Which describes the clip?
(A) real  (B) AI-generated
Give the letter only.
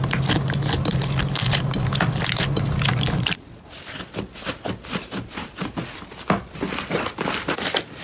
A